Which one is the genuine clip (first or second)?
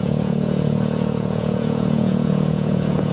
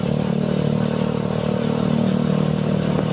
second